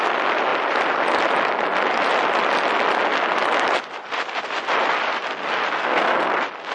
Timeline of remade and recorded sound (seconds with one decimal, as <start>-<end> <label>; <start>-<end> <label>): 0.0-5.8 recorded; 5.8-6.3 remade; 6.3-6.7 recorded